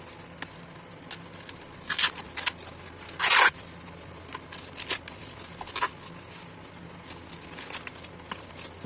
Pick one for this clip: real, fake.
real